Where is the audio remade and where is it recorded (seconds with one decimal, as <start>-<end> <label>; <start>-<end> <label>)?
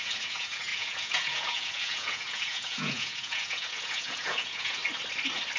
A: 0.0-4.8 remade; 4.8-5.6 recorded